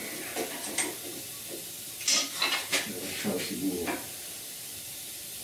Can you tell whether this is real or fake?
real